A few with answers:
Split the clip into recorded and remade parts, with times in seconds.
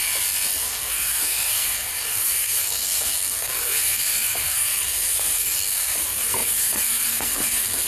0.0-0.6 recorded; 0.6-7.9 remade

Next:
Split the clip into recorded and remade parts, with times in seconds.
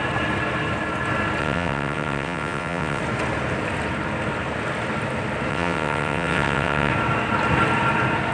0.0-1.4 recorded; 1.4-3.0 remade; 3.0-5.5 recorded; 5.5-6.9 remade; 6.9-8.3 recorded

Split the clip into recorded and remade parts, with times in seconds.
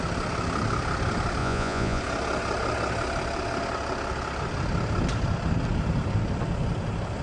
0.0-1.4 recorded; 1.4-2.0 remade; 2.0-7.2 recorded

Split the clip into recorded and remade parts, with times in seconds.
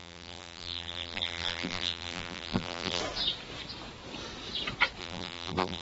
0.0-3.0 remade; 3.0-5.0 recorded; 5.0-5.8 remade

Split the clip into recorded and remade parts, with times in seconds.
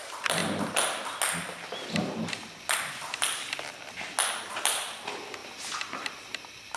0.0-0.4 remade; 0.4-4.5 recorded; 4.5-6.8 remade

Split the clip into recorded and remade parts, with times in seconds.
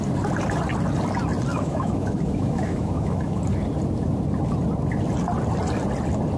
0.0-1.5 recorded; 1.5-3.4 remade; 3.4-6.4 recorded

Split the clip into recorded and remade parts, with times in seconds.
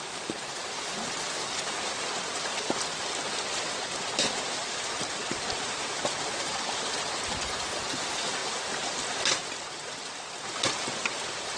0.0-11.6 recorded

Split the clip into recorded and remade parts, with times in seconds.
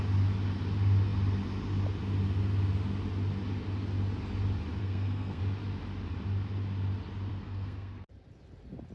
0.0-4.8 recorded; 4.8-5.4 remade; 5.4-7.3 recorded; 7.3-8.1 remade; 8.1-8.9 recorded